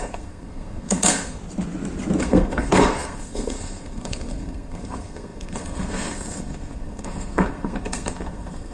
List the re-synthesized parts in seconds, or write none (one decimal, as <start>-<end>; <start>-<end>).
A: 0.0-1.4; 2.2-8.7